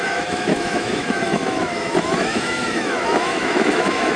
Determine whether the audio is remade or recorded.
remade